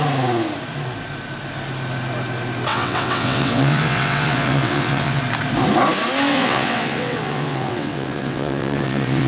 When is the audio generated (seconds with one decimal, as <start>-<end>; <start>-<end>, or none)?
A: 2.7-5.2; 6.3-9.3